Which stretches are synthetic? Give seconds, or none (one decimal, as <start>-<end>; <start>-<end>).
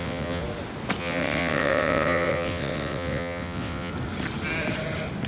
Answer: 0.0-0.4; 1.0-3.9